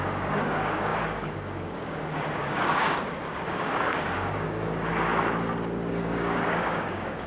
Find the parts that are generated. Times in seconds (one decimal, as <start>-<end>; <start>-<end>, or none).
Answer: 0.0-4.9; 5.9-7.3